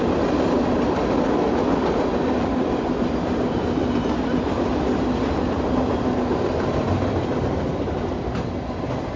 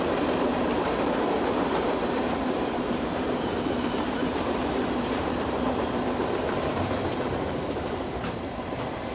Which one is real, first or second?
first